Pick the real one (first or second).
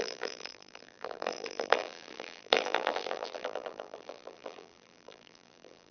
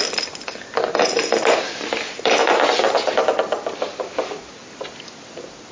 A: second